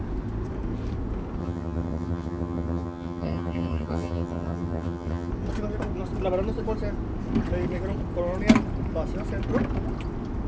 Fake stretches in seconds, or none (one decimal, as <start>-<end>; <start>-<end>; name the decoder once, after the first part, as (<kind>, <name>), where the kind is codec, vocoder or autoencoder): 1.4-5.3 (vocoder, HiFi-GAN)